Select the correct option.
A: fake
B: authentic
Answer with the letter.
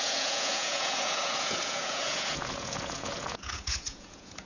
A